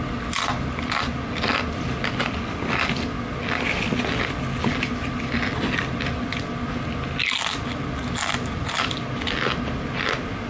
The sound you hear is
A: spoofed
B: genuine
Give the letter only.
B